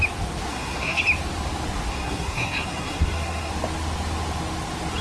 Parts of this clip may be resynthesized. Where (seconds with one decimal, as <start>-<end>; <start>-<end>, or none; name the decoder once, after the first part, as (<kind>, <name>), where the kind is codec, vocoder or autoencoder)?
0.5-1.0 (codec, SNAC); 1.9-3.5